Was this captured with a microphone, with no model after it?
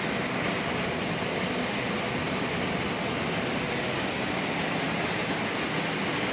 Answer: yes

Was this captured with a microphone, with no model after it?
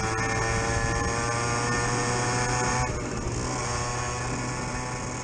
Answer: yes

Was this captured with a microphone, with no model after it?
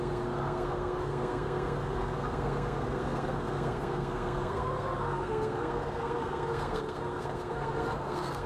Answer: no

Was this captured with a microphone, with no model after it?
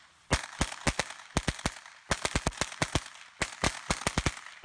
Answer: yes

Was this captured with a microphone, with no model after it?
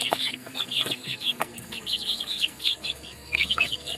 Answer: no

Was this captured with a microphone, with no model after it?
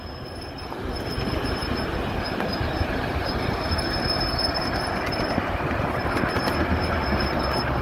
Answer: yes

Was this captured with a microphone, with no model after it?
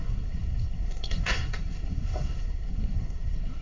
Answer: no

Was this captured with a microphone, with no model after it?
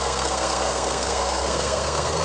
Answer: no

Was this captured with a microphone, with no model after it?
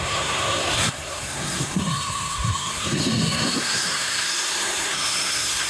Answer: no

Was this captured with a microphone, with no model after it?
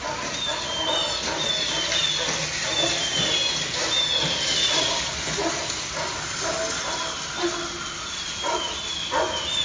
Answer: yes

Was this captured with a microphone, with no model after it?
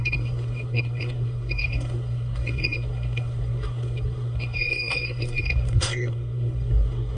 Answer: no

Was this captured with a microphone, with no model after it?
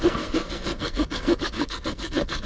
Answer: no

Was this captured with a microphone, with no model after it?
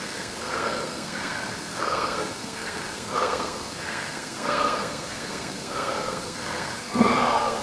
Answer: no